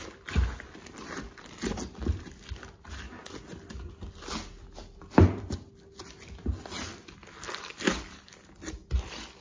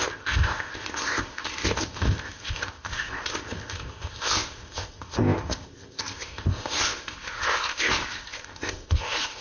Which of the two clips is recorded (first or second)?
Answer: first